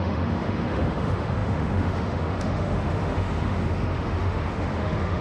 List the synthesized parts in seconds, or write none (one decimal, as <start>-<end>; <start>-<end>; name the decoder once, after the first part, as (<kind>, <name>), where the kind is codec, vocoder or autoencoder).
0.0-5.2 (autoencoder, DAC-VAE)